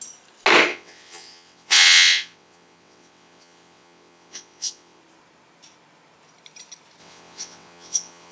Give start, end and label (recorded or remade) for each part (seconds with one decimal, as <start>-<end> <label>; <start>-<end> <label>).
0.0-0.7 recorded; 0.7-5.0 remade; 5.0-7.0 recorded; 7.0-8.3 remade